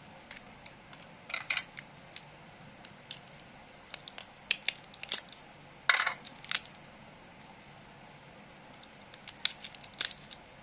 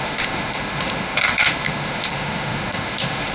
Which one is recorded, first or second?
first